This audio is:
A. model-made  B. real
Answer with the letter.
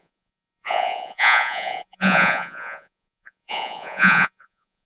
A